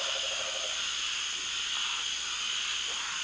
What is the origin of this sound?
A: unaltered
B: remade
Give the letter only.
A